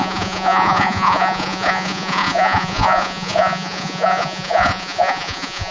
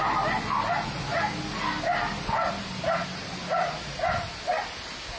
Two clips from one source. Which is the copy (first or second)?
first